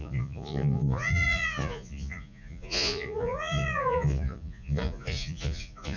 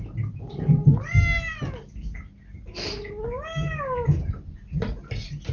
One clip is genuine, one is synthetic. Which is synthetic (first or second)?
first